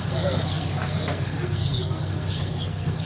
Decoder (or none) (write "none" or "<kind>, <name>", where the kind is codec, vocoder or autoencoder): codec, SNAC